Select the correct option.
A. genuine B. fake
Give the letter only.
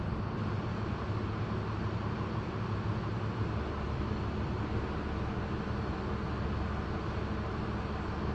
A